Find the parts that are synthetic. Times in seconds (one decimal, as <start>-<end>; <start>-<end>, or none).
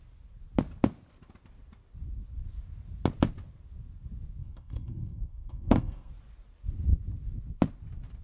4.4-6.1